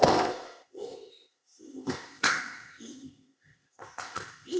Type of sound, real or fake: fake